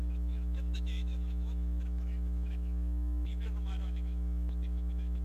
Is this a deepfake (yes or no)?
yes